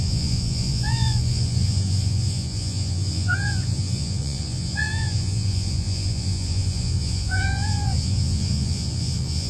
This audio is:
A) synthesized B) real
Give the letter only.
A